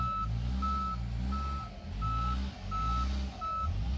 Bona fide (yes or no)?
yes